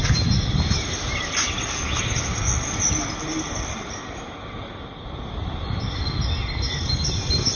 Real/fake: real